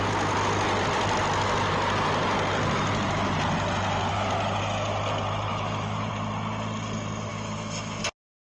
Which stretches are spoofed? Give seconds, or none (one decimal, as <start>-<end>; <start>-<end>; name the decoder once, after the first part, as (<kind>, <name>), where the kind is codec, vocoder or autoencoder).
5.5-6.1 (autoencoder, DAC-VAE); 7.3-8.0